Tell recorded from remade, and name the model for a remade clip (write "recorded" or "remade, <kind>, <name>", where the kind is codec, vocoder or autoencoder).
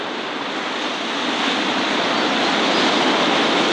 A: recorded